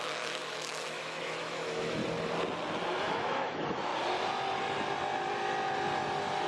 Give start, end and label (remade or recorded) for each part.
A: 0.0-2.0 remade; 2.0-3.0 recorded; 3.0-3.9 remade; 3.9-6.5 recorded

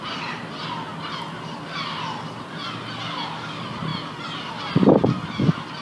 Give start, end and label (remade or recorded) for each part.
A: 0.0-5.8 recorded